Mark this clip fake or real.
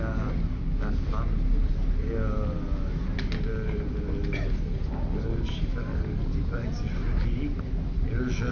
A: real